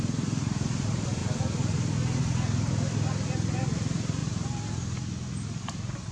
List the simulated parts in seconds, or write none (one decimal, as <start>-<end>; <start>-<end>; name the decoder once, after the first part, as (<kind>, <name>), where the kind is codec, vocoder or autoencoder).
0.0-1.2 (vocoder, BigVGAN v2); 2.2-4.2